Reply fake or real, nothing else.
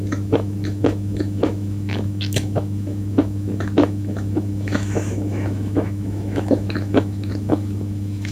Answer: fake